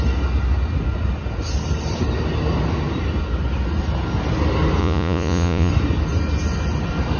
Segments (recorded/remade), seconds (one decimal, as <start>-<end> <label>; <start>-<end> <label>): 0.0-4.8 recorded; 4.8-5.7 remade; 5.7-7.2 recorded